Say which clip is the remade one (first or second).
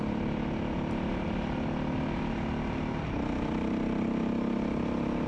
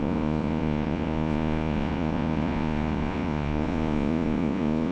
second